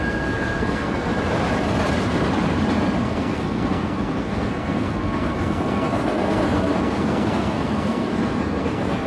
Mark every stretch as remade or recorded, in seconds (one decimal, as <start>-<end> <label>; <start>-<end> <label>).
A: 0.0-1.1 remade; 1.1-3.0 recorded; 3.0-9.1 remade